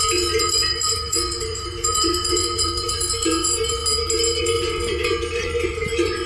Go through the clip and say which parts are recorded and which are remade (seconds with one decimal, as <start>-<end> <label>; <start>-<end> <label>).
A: 0.0-3.8 remade; 3.8-4.4 recorded; 4.4-6.3 remade